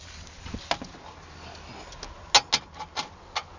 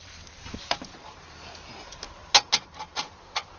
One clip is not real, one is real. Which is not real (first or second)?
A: second